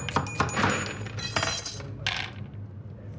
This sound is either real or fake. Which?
real